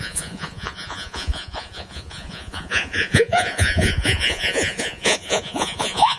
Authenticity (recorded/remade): remade